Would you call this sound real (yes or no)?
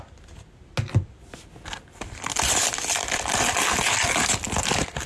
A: yes